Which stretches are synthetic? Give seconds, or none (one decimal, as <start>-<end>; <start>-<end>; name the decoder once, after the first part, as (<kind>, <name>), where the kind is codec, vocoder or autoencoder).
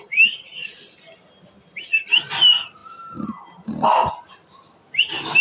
none